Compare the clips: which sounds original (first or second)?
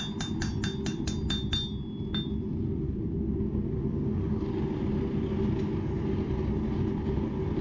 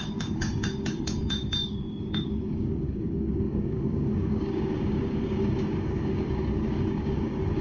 first